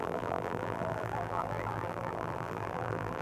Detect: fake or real fake